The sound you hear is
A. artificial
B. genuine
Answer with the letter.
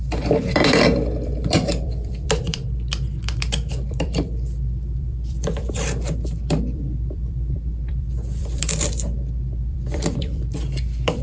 A